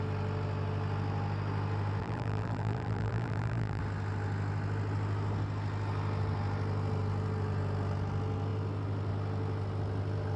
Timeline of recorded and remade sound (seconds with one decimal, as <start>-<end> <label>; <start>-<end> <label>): 0.0-2.0 recorded; 2.0-3.8 remade; 3.8-10.4 recorded